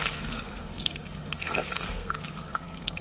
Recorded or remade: remade